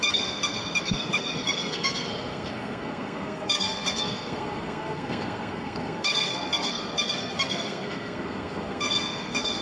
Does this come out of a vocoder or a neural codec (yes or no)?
yes